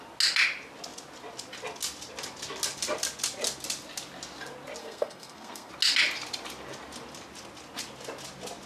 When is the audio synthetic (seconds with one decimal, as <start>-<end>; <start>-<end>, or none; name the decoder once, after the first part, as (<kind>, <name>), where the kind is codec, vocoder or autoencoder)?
4.8-5.7 (codec, SNAC)